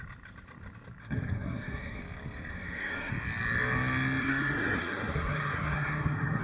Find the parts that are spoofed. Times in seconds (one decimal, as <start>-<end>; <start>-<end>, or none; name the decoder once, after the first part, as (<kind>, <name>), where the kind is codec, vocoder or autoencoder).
1.0-2.0 (codec, SNAC); 2.5-3.1; 4.2-6.4